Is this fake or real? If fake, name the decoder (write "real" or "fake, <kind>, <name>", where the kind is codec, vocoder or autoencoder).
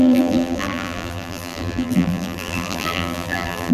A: fake, vocoder, BigVGAN v2